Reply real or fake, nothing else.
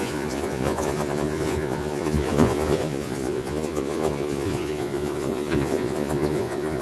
fake